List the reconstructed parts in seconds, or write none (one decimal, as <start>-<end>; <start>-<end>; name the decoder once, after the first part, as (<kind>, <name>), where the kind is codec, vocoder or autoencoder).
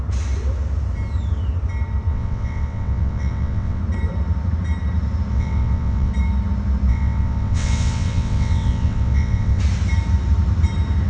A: 2.1-3.8 (vocoder, WaveNeXt); 5.3-6.1; 6.9-9.6